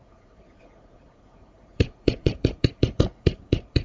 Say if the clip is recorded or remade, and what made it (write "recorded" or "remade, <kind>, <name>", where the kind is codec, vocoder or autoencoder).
remade, vocoder, Vocos